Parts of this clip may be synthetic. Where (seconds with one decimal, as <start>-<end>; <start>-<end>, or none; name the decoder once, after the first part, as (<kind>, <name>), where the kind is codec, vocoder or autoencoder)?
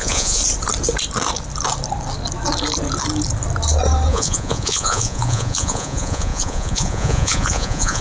0.0-0.4 (vocoder, Vocos); 4.1-8.0